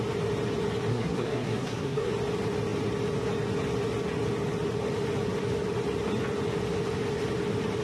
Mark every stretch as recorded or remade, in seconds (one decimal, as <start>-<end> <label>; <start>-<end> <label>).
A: 0.0-0.9 recorded; 0.9-2.1 remade; 2.1-7.8 recorded